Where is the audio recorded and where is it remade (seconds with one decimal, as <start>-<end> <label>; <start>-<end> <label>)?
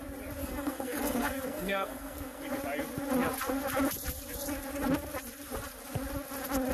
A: 0.0-0.4 recorded; 0.4-2.4 remade; 2.4-6.7 recorded